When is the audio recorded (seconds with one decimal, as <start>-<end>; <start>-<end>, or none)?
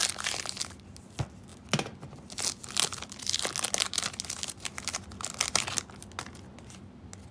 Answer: 0.0-7.3